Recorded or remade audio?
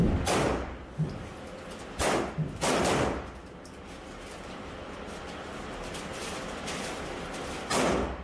recorded